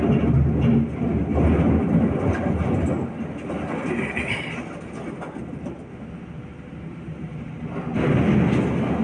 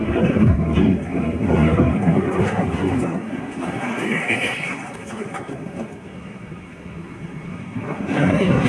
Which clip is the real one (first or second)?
first